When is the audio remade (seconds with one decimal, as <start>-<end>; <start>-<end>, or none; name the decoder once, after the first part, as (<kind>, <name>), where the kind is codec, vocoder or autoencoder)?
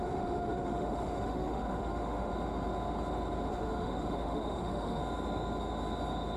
0.0-2.3 (autoencoder, DAC-VAE); 3.5-5.0